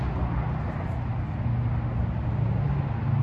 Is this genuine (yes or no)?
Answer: yes